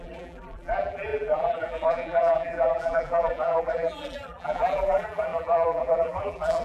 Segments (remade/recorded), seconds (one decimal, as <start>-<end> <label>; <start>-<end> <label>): 0.0-6.6 remade